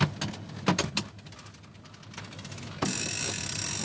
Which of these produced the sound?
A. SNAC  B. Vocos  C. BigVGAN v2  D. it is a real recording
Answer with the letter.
D